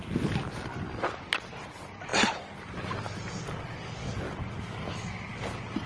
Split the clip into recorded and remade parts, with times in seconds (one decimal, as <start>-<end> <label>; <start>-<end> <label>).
0.0-5.9 recorded